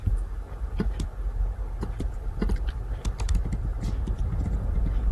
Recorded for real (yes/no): yes